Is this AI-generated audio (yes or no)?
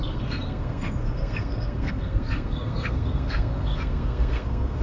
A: yes